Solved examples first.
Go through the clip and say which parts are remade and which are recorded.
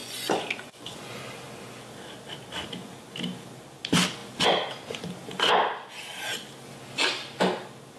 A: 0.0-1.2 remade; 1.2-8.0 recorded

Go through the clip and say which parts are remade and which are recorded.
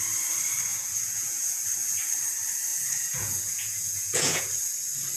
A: 0.0-0.7 recorded; 0.7-1.6 remade; 1.6-2.7 recorded; 2.7-4.4 remade; 4.4-5.2 recorded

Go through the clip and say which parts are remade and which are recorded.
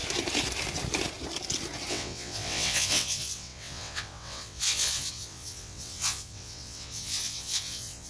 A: 0.0-1.9 recorded; 1.9-8.1 remade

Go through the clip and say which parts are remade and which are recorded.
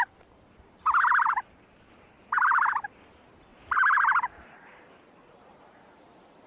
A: 0.0-3.5 recorded; 3.5-5.6 remade; 5.6-6.5 recorded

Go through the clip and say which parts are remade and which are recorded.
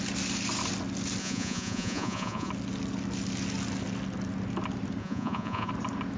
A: 0.0-1.2 recorded; 1.2-2.5 remade; 2.5-5.0 recorded; 5.0-5.7 remade; 5.7-6.2 recorded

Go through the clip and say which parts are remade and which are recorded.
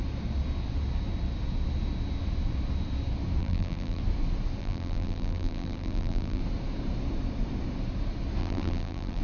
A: 0.0-3.4 recorded; 3.4-4.0 remade; 4.0-4.6 recorded; 4.6-6.4 remade; 6.4-8.4 recorded; 8.4-9.2 remade